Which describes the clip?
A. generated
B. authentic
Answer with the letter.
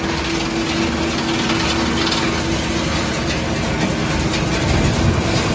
B